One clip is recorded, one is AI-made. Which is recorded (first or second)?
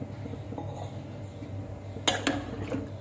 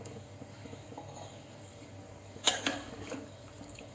first